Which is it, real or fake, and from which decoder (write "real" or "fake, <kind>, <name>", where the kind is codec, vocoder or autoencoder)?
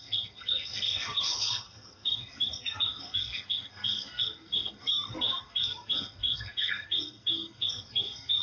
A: fake, codec, SNAC